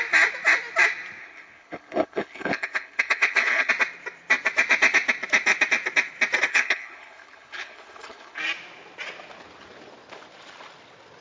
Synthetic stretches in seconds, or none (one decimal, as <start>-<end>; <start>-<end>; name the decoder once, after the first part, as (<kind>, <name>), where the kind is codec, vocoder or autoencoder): 1.2-3.7 (codec, HILCodec); 6.5-8.4